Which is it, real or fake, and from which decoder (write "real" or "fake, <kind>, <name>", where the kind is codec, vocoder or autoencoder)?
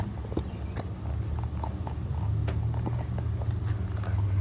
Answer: real